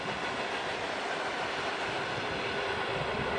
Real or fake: real